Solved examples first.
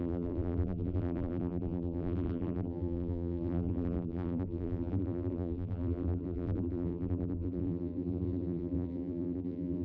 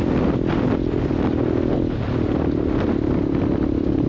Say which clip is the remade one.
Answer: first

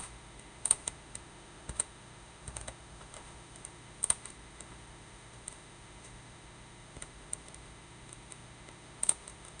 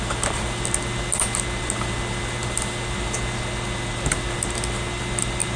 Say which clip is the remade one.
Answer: first